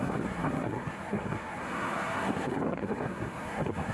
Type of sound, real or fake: fake